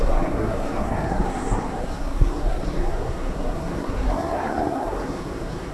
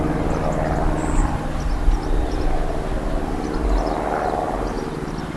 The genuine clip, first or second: second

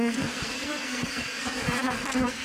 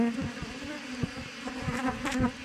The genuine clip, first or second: second